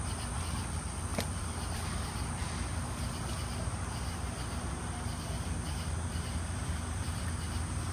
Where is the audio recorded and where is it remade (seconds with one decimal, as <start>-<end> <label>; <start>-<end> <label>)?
0.0-1.1 recorded; 1.1-2.5 remade; 2.5-6.1 recorded; 6.1-7.2 remade; 7.2-7.9 recorded